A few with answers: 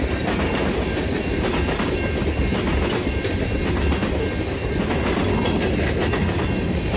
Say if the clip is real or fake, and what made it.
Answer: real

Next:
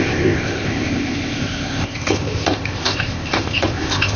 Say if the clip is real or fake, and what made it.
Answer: fake, codec, ZipCodec